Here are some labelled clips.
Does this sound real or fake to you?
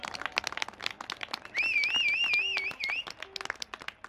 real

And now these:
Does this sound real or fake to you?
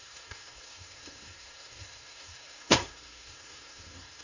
fake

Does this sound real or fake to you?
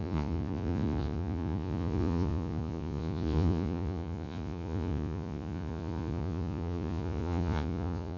fake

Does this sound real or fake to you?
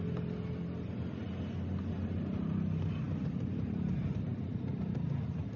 real